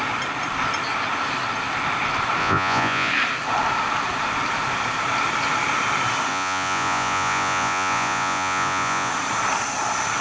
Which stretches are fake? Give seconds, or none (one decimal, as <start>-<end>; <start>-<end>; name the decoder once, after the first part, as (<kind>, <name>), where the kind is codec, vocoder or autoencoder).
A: 2.4-3.1 (vocoder, Vocos); 6.3-9.1